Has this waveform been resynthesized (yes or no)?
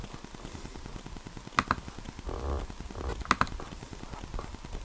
no